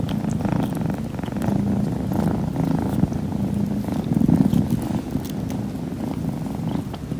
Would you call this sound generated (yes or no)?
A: no